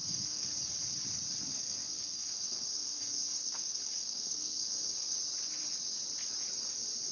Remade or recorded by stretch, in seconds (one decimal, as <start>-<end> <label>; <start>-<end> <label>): 0.0-0.5 remade; 0.5-1.5 recorded; 1.5-5.2 remade; 5.2-7.1 recorded